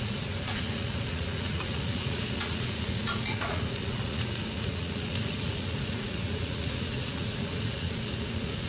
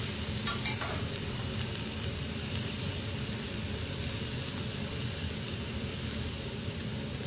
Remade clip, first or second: first